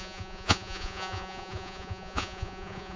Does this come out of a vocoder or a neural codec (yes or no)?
yes